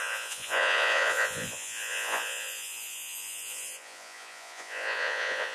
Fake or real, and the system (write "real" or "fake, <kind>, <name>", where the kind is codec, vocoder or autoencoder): fake, vocoder, Vocos